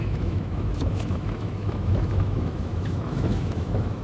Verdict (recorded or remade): remade